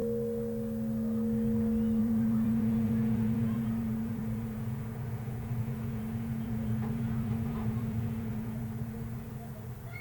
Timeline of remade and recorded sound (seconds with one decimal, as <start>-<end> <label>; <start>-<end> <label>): 0.0-2.0 recorded; 2.0-10.0 remade